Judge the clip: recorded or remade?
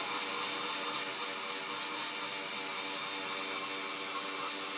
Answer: recorded